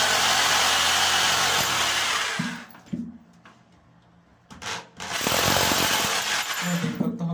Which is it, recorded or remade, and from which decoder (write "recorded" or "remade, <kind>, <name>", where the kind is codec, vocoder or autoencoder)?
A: recorded